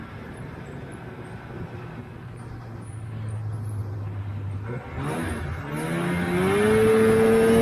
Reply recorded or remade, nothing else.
recorded